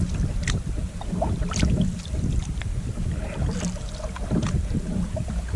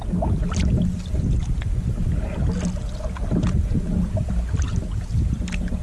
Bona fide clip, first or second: second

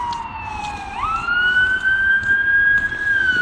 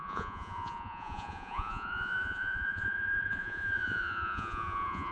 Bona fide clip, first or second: first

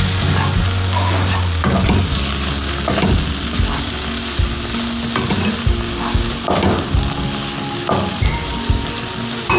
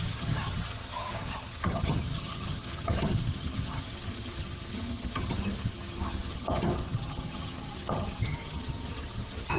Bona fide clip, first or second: first